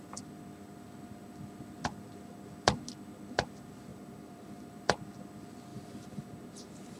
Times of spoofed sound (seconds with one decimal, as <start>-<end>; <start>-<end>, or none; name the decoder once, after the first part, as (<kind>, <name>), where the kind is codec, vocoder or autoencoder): 3.9-4.7 (vocoder, BigVGAN v2); 5.7-7.0